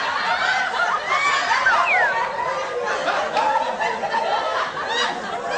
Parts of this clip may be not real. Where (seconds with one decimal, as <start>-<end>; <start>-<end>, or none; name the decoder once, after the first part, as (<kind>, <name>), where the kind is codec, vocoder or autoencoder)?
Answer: none